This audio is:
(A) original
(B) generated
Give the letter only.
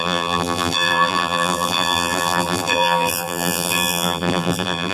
B